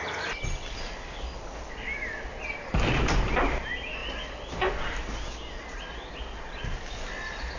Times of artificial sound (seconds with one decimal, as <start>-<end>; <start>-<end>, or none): none